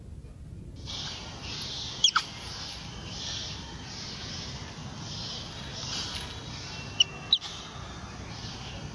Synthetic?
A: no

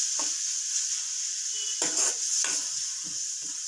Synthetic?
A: no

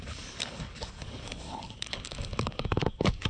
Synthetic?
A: yes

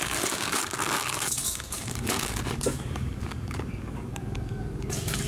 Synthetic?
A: yes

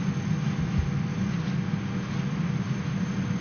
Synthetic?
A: no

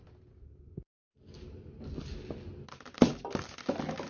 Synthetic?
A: no